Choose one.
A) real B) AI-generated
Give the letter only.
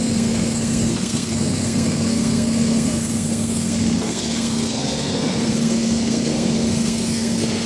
B